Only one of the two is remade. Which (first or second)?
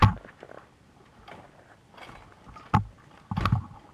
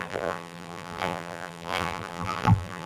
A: second